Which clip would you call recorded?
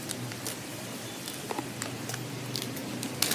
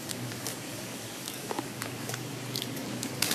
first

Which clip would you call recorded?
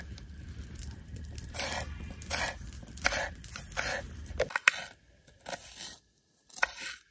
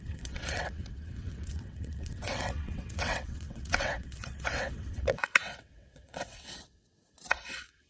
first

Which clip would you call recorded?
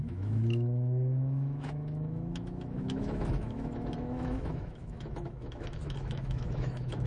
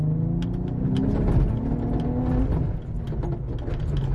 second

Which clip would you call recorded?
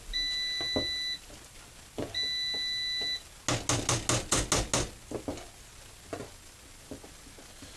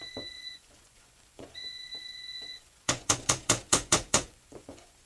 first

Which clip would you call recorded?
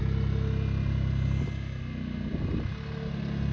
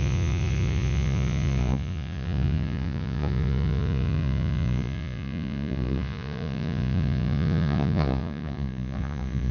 first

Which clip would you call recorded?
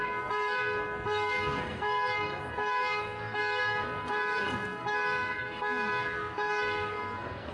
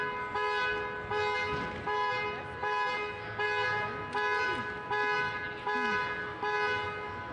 second